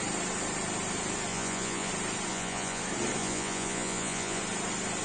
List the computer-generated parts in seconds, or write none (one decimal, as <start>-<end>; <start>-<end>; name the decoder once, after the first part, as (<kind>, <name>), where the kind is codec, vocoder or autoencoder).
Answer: 1.3-1.9 (vocoder, Vocos); 2.3-2.8; 3.2-4.4